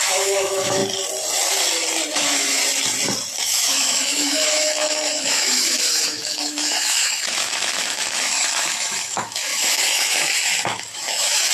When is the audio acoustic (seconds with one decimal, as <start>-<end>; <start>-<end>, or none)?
0.8-2.1; 2.6-3.4